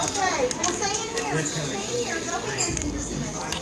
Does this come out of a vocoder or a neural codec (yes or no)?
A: no